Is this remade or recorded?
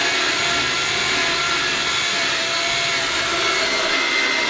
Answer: recorded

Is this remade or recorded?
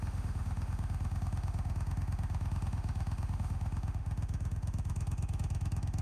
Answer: remade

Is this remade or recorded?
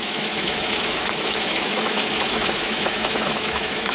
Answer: remade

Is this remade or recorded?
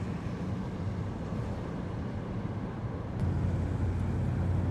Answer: recorded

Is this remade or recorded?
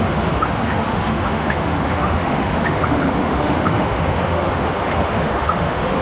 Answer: remade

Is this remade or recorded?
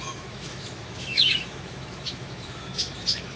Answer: remade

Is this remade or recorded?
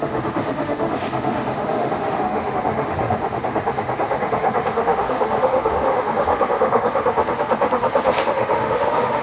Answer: remade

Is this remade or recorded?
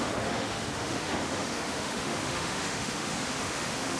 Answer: remade